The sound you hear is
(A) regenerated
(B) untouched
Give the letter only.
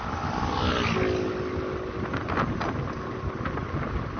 B